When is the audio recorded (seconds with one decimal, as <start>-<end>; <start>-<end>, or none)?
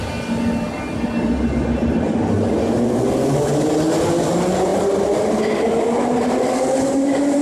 0.0-7.4